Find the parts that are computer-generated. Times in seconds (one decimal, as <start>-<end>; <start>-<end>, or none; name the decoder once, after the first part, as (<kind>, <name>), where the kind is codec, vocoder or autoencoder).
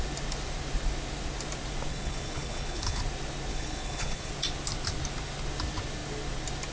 1.9-3.0 (codec, HILCodec); 3.5-4.3